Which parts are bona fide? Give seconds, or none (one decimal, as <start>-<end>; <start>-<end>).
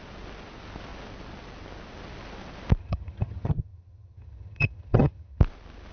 0.0-2.8; 5.4-5.9